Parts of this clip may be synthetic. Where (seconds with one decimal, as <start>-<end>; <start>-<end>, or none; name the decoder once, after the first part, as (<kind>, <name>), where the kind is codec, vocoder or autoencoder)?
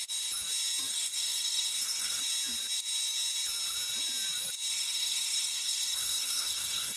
0.9-2.2 (codec, SNAC); 4.7-7.0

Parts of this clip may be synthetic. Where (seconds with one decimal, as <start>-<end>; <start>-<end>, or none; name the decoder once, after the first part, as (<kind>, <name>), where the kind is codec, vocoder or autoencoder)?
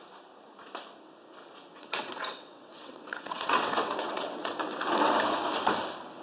1.7-5.1 (vocoder, WaveNeXt)